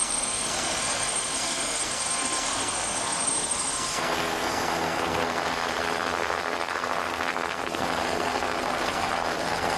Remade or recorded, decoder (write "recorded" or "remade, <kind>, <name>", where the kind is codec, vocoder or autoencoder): remade, codec, SNAC